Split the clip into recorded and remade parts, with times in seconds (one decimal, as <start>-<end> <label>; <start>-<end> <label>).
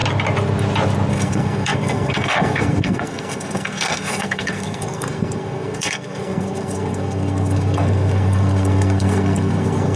0.0-1.1 recorded; 1.1-10.0 remade